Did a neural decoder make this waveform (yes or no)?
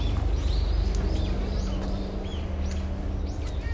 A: no